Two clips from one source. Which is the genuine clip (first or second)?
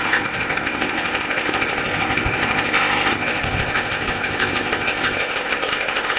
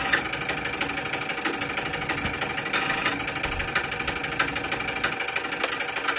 second